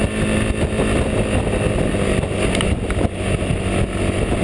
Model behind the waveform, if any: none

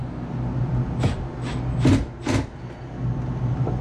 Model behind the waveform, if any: none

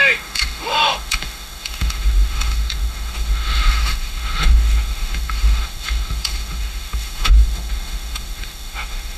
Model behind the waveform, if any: autoencoder, DAC-VAE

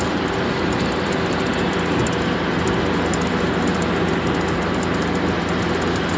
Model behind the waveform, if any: none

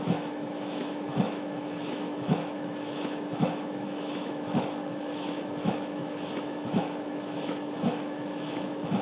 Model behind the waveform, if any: autoencoder, DAC-VAE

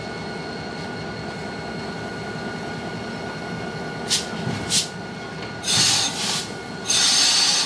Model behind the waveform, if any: none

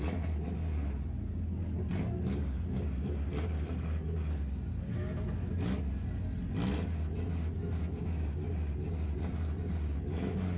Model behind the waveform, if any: none